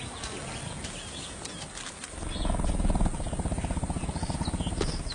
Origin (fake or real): real